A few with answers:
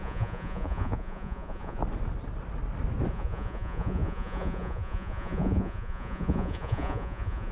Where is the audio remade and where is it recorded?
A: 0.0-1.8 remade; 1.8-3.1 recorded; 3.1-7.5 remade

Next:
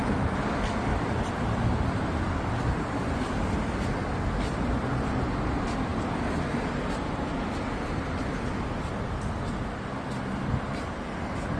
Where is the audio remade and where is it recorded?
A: 0.0-0.9 recorded; 0.9-1.5 remade; 1.5-11.6 recorded

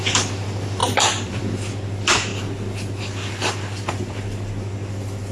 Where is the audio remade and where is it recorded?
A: 0.0-2.3 remade; 2.3-3.9 recorded; 3.9-5.3 remade

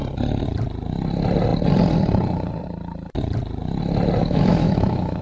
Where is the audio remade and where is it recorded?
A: 0.0-4.2 recorded; 4.2-5.2 remade

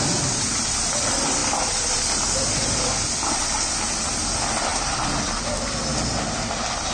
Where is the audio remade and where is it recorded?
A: 0.0-6.9 recorded

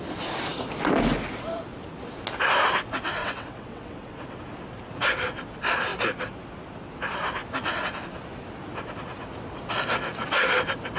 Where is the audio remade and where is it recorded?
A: 0.0-3.2 recorded; 3.2-4.4 remade; 4.4-11.0 recorded